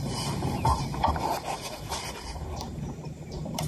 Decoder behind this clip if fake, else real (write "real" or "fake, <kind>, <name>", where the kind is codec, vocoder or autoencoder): fake, vocoder, BigVGAN v2